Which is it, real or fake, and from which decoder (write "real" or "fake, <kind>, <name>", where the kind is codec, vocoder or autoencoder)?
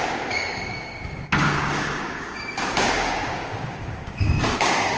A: fake, codec, DAC